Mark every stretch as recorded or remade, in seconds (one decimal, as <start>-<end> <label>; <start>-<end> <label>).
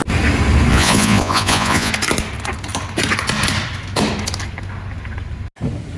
0.0-0.7 recorded; 0.7-1.9 remade; 1.9-6.0 recorded